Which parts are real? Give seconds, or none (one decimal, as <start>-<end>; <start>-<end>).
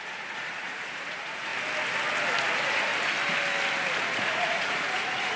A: 1.5-2.4; 2.9-4.0